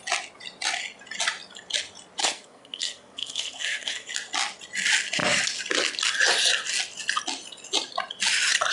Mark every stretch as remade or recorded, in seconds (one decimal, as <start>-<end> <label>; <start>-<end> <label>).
0.0-2.2 recorded; 2.2-4.1 remade; 4.1-8.7 recorded